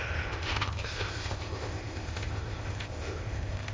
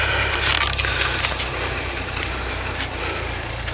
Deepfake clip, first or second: first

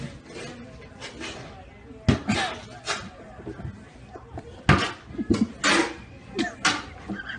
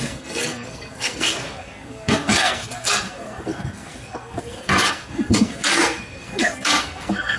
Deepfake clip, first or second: second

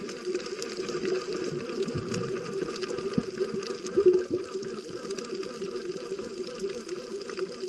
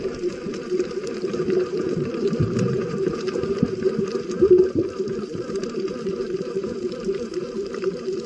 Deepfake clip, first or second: second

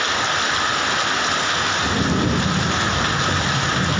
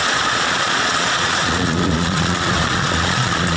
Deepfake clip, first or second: second